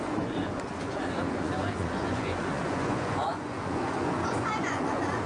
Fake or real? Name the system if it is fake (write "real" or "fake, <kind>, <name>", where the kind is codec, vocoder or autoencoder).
fake, vocoder, Vocos